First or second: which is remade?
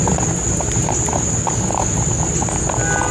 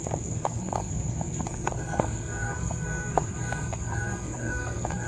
second